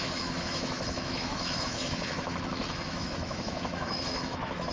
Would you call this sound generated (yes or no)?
yes